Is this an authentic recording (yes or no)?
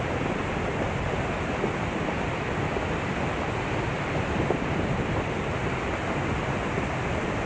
yes